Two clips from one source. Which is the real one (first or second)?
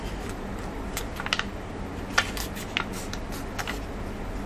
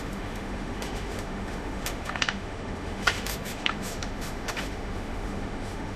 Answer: first